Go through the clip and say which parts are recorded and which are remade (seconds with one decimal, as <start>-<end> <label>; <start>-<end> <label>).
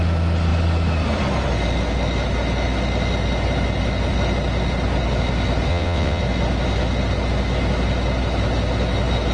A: 0.0-5.7 recorded; 5.7-6.2 remade; 6.2-9.3 recorded